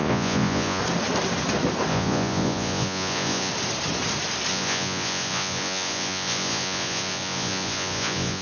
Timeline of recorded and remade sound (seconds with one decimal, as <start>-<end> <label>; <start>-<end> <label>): 0.0-0.8 remade; 0.8-1.9 recorded; 1.9-3.5 remade; 3.5-4.5 recorded; 4.5-8.4 remade